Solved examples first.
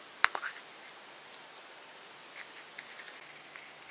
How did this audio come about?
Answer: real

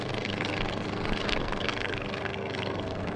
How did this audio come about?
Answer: fake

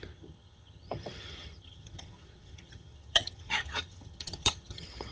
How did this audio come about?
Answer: fake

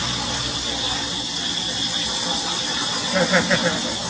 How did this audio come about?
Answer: real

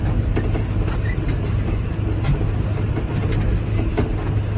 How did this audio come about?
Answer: real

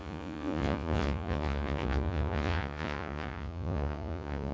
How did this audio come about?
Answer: fake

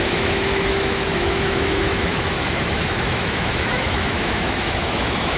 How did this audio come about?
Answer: fake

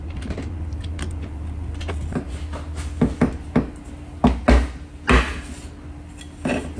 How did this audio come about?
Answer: real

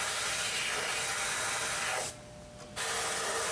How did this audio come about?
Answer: real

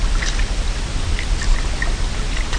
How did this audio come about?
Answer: real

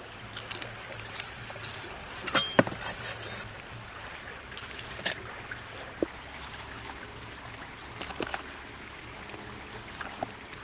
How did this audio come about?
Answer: real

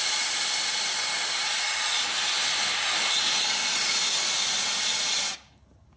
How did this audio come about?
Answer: real